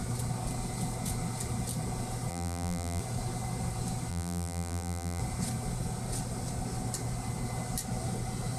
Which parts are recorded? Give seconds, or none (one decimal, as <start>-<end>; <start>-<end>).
0.0-2.3; 3.0-4.1; 5.2-8.6